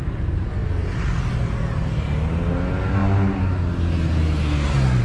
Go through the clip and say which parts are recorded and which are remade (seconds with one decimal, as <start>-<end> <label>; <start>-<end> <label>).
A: 0.0-5.0 recorded